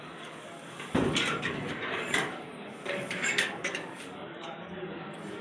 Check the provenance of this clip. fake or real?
fake